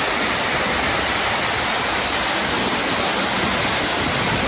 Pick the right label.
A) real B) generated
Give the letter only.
A